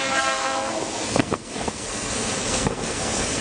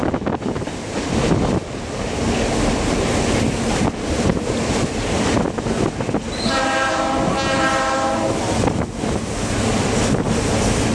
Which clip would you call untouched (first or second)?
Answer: second